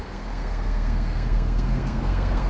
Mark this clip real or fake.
fake